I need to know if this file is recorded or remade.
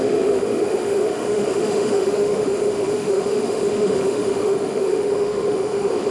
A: remade